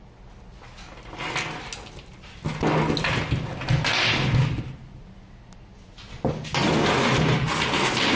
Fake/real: real